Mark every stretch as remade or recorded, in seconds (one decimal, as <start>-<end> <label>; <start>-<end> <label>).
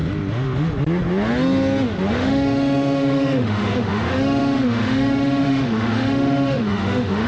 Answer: 0.0-2.1 recorded; 2.1-7.3 remade